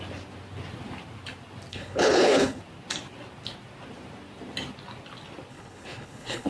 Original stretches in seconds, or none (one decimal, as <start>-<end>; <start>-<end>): 0.0-1.7; 2.6-5.5